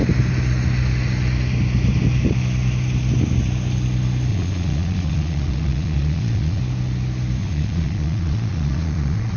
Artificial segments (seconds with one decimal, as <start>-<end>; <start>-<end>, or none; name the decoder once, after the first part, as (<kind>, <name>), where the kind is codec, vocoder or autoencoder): 4.3-6.6 (vocoder, Vocos); 7.4-9.4